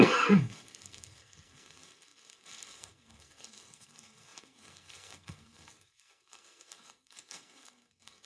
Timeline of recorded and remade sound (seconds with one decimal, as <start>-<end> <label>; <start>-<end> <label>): 0.0-8.3 remade